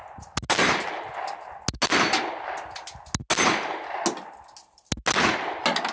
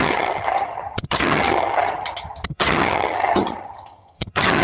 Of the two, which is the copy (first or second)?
second